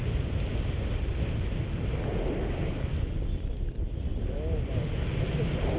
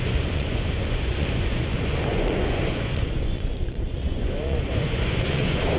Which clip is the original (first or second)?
first